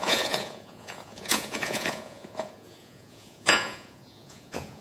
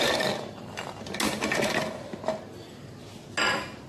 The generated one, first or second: first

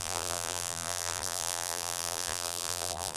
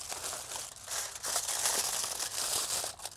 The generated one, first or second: first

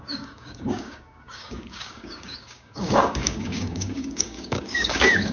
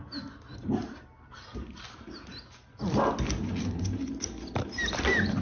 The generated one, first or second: first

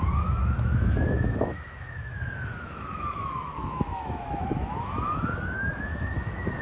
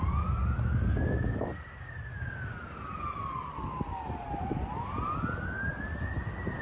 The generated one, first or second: first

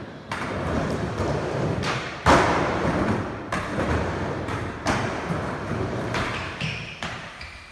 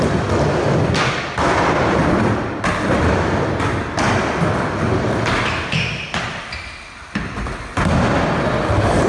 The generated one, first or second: first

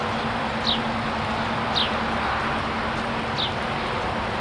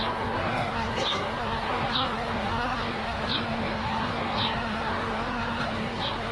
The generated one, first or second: second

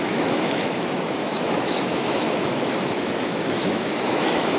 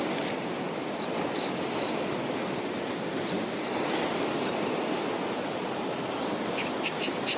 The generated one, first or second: first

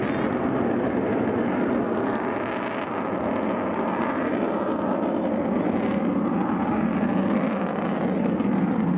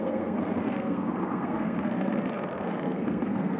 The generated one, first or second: second